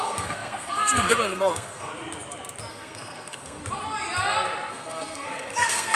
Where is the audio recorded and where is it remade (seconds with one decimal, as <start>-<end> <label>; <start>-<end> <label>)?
0.0-1.9 remade; 1.9-2.7 recorded; 2.7-3.6 remade; 3.6-4.7 recorded; 4.7-6.0 remade